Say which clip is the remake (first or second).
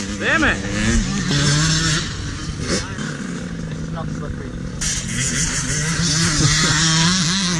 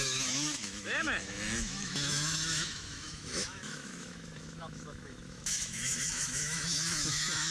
second